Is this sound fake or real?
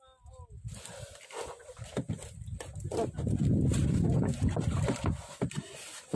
real